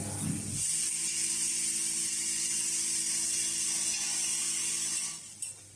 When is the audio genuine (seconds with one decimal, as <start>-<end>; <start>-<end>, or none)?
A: 0.0-5.8